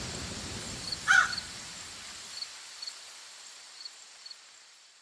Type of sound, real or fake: real